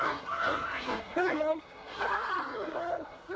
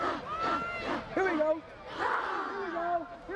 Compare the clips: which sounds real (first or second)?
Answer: second